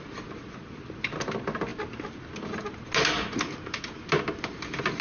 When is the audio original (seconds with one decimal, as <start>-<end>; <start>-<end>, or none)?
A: 0.0-5.0